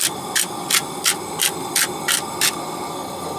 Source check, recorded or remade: recorded